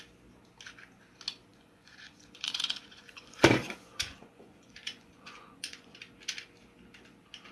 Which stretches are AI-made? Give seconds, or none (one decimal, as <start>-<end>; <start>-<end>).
1.5-6.0